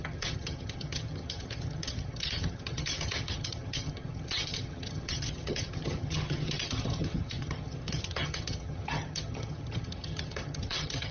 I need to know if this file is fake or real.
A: fake